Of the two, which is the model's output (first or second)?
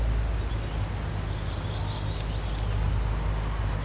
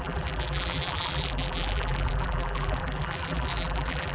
second